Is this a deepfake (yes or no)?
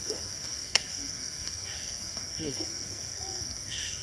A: yes